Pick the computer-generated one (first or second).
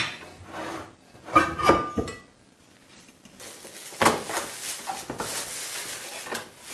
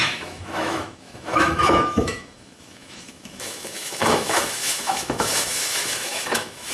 second